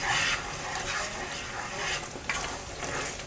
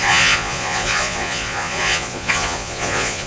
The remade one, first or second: second